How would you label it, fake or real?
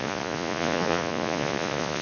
fake